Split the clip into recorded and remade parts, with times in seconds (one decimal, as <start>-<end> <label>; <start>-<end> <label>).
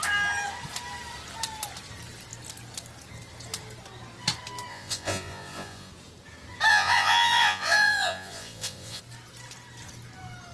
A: 0.0-4.7 recorded; 4.7-5.9 remade; 5.9-6.7 recorded; 6.7-9.0 remade; 9.0-10.5 recorded